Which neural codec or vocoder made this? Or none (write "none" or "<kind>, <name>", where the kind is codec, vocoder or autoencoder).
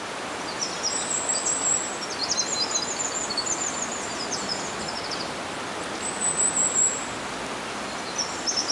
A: none